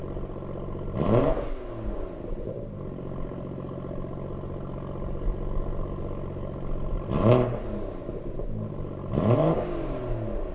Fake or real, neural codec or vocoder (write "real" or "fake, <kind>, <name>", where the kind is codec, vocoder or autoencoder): real